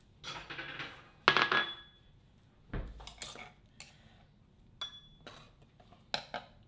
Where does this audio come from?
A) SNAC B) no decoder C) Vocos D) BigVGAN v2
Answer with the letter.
B